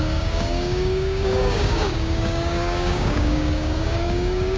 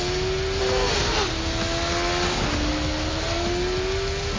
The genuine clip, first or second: second